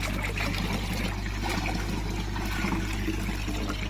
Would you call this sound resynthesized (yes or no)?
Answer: no